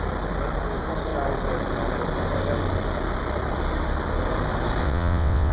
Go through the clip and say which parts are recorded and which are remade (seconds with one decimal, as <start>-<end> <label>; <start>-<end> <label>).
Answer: 0.0-4.8 recorded; 4.8-5.5 remade